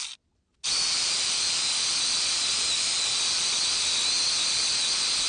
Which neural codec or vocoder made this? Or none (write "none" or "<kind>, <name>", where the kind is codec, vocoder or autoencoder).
none